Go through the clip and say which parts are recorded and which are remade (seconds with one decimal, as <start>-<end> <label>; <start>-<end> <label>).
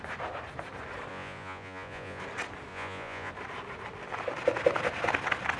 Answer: 0.0-1.1 recorded; 1.1-2.2 remade; 2.2-2.7 recorded; 2.7-3.3 remade; 3.3-5.6 recorded